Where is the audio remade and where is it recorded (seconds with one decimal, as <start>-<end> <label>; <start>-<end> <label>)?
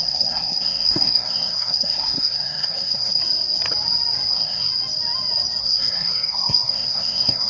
0.0-3.2 remade; 3.2-4.3 recorded; 4.3-4.7 remade; 4.7-5.6 recorded; 5.6-7.5 remade